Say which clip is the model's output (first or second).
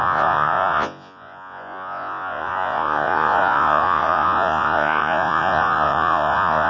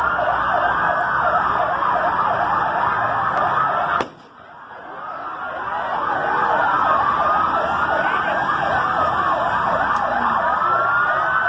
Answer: first